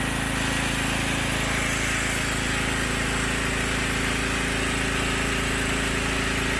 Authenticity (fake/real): real